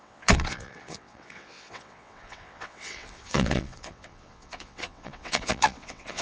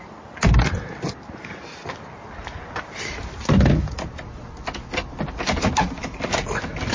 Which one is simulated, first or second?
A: first